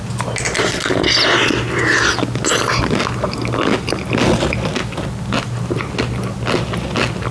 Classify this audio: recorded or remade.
recorded